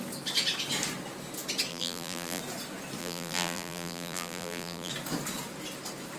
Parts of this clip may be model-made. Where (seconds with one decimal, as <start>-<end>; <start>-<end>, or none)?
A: 1.7-2.4; 3.0-4.9

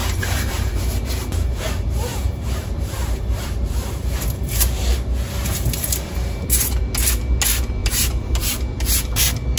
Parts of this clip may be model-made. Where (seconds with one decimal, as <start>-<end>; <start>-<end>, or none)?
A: 0.0-1.5; 2.1-6.8; 7.8-9.2

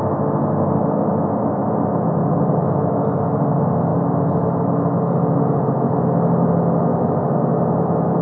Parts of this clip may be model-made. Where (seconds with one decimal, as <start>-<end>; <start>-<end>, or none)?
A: none

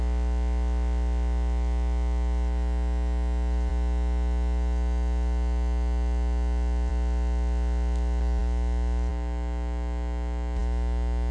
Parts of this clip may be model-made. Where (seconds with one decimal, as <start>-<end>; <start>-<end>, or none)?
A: none

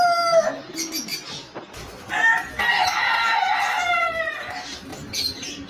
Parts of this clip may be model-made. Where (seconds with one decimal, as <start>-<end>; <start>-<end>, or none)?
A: 0.0-0.4; 2.8-5.7

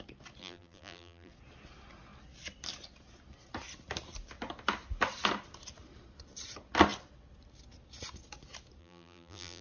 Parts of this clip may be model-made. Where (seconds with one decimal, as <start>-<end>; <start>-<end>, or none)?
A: 0.4-1.3; 8.8-9.6

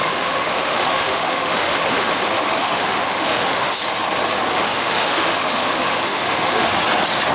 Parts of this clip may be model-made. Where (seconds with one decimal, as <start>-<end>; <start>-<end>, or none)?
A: 0.0-2.2; 2.6-3.8; 4.5-6.7

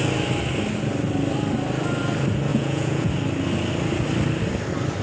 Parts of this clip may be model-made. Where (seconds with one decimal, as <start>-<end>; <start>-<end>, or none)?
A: 2.5-3.1